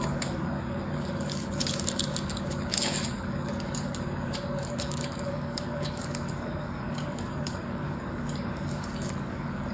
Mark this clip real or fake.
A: fake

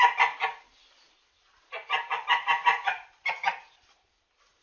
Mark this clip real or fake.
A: fake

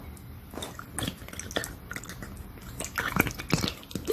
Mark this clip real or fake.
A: real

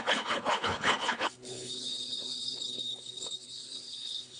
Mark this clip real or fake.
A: fake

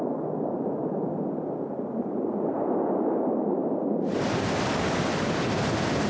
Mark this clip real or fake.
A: real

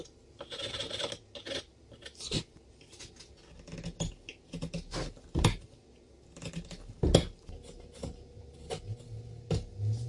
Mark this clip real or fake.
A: real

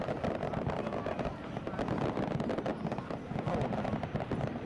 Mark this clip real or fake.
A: real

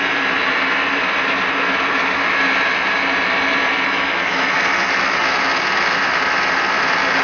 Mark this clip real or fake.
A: real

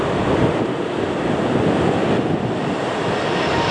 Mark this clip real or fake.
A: real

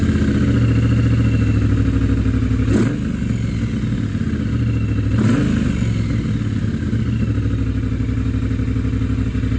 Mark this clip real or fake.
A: real